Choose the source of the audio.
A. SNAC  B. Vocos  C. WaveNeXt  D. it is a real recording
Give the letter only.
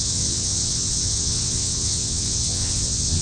C